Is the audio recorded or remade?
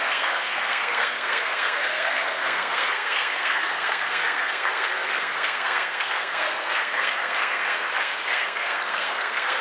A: remade